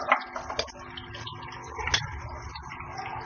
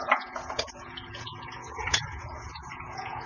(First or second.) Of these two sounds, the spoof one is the second